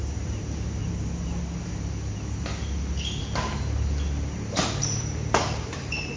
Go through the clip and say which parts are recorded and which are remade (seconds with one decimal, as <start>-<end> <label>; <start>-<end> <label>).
0.0-0.8 remade; 0.8-4.5 recorded; 4.5-6.2 remade